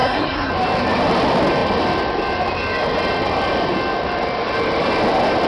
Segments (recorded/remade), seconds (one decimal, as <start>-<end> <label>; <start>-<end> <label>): 0.0-0.5 remade; 0.5-5.5 recorded